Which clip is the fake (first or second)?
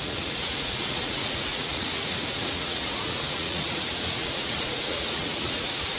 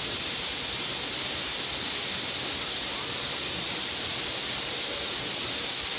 first